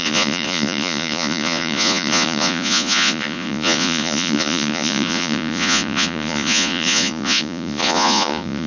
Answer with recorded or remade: remade